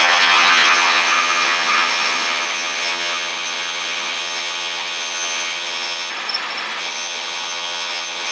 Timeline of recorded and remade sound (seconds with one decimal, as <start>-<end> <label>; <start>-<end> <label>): 0.0-6.1 remade; 6.1-6.8 recorded; 6.8-8.3 remade